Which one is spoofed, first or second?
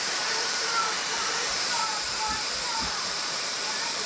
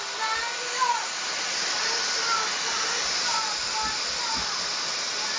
first